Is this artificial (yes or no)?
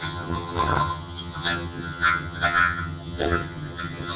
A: yes